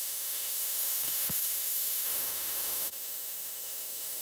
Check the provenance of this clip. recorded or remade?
remade